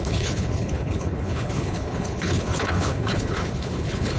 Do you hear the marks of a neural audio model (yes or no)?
yes